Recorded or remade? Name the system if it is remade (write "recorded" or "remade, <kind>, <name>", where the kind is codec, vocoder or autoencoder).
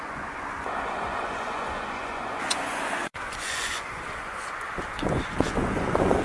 remade, vocoder, Vocos